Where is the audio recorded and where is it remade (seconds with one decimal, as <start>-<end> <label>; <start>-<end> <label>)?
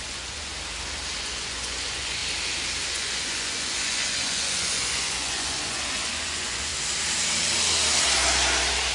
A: 0.0-0.5 remade; 0.5-1.2 recorded; 1.2-2.2 remade; 2.2-2.9 recorded; 2.9-6.7 remade; 6.7-8.9 recorded